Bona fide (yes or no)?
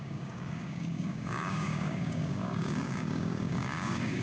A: no